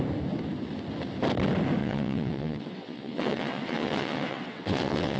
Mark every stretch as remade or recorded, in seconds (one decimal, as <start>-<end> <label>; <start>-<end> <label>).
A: 0.0-1.8 recorded; 1.8-5.2 remade